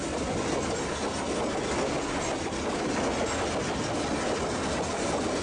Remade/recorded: recorded